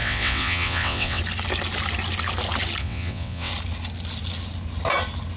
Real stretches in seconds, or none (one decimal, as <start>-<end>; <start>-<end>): 1.2-2.8; 3.5-5.4